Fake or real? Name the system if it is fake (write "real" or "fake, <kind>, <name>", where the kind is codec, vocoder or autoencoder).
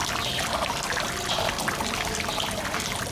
real